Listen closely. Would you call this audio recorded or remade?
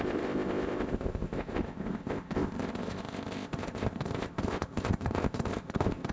remade